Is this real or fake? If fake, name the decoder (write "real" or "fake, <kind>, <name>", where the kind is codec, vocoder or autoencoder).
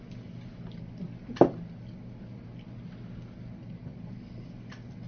real